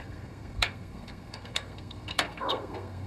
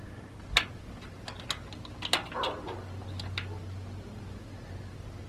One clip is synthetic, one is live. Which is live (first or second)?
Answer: second